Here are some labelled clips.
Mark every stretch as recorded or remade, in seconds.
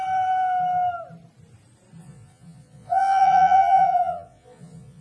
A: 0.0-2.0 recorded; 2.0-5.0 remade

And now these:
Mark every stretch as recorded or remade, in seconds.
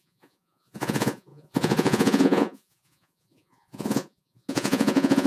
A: 0.0-5.3 remade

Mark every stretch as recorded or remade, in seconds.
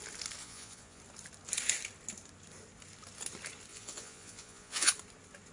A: 0.0-0.4 recorded; 0.4-1.0 remade; 1.0-3.7 recorded; 3.7-4.9 remade; 4.9-5.5 recorded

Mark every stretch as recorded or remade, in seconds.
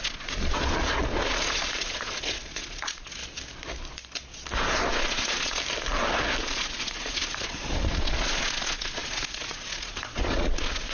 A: 0.0-3.2 remade; 3.2-4.9 recorded; 4.9-5.6 remade; 5.6-6.4 recorded; 6.4-10.9 remade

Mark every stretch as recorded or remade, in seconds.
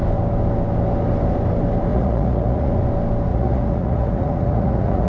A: 0.0-1.9 recorded; 1.9-2.7 remade; 2.7-3.3 recorded; 3.3-5.1 remade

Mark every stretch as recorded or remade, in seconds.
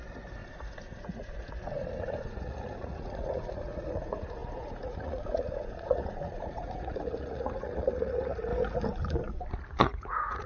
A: 0.0-8.5 remade; 8.5-9.8 recorded; 9.8-10.5 remade